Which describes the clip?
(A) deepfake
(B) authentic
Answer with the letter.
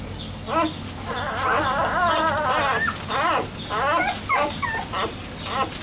B